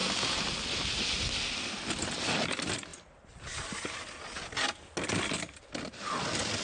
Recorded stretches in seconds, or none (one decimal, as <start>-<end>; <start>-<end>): 0.0-6.6